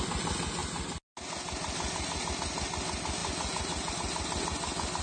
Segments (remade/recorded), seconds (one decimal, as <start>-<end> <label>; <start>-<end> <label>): 0.0-5.0 recorded